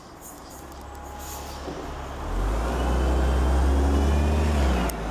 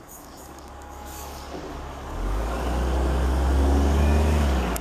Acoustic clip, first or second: first